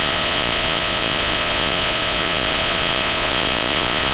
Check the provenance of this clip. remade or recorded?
remade